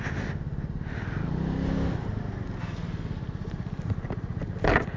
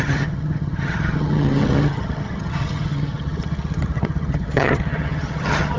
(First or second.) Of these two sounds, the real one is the first